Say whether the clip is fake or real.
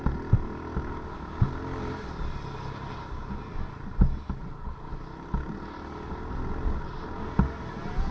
real